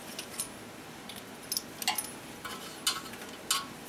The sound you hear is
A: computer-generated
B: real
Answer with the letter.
B